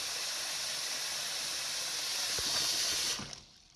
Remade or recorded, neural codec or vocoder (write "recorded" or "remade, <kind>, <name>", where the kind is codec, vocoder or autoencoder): recorded